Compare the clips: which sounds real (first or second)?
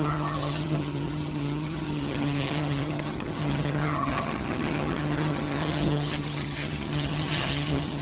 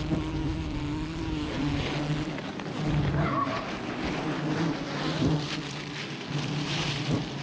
second